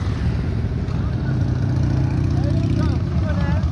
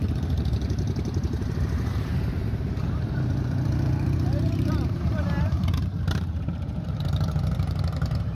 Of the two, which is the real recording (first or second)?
first